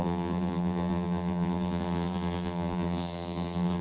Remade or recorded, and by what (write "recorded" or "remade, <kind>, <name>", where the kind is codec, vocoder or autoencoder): remade, vocoder, BigVGAN v2